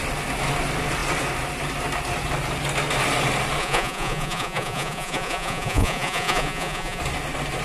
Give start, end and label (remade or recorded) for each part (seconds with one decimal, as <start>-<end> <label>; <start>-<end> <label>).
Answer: 0.0-3.6 recorded; 3.6-7.0 remade; 7.0-7.6 recorded